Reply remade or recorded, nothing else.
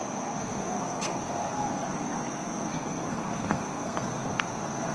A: remade